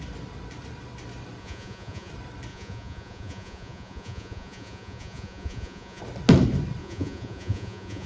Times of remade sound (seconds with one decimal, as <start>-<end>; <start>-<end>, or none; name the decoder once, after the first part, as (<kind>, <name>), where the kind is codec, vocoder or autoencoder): 1.4-2.1 (vocoder, Vocos); 2.5-6.0; 6.8-8.1